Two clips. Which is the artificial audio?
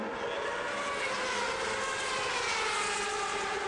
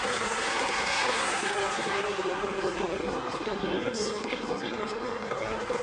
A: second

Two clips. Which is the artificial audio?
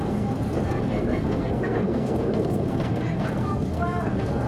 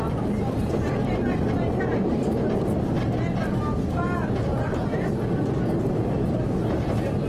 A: first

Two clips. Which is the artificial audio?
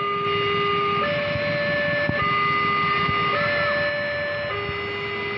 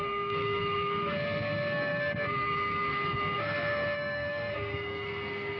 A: second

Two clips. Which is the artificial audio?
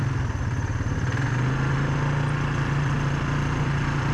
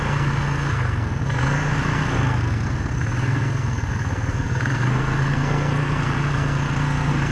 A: second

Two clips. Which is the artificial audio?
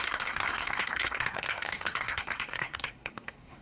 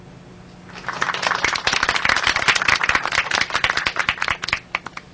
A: first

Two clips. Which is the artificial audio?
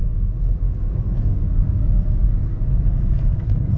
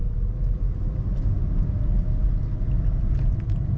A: first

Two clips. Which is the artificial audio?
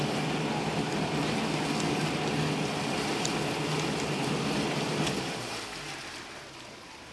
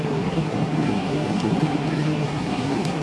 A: second